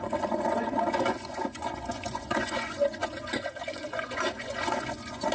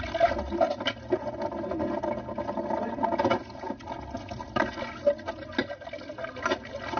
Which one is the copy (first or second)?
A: first